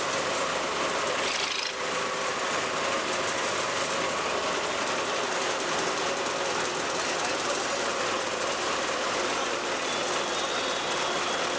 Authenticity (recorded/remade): recorded